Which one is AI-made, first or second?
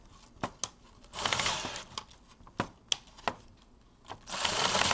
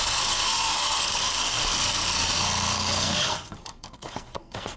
second